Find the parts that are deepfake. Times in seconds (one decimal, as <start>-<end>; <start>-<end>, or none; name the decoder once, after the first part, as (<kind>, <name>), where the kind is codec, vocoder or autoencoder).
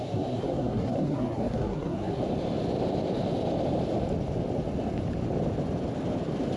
0.0-2.2 (codec, SNAC)